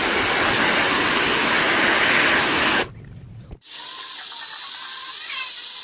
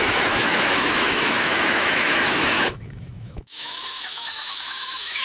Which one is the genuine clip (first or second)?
first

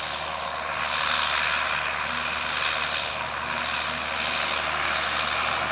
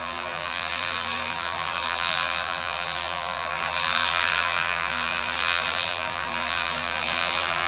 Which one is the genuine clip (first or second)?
first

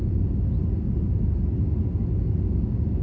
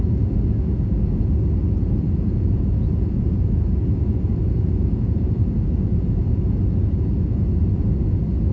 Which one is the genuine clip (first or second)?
first